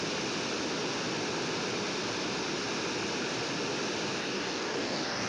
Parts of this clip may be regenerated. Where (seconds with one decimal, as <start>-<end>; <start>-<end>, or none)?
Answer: 4.2-5.3